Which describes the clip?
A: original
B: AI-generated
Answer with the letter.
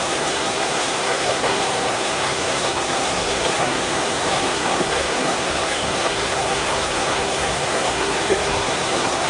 B